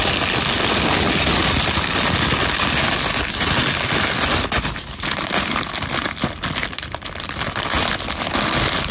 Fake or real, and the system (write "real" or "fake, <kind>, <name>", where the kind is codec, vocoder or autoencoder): real